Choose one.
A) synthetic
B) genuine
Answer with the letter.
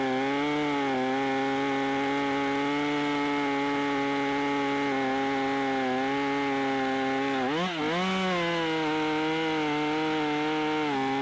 B